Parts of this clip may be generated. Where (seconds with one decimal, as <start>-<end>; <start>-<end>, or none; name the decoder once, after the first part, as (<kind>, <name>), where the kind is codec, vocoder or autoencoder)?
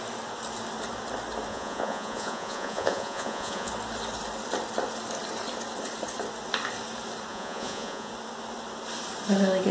1.5-3.7 (vocoder, Vocos); 7.3-8.1